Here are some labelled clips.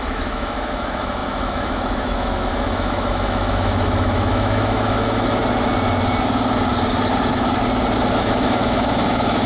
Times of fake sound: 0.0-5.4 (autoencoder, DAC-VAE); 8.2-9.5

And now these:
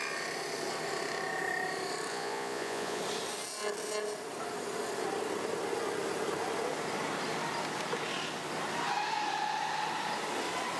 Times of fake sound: 2.1-3.0 (vocoder, Vocos)

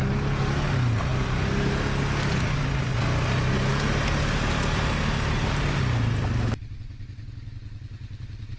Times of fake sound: none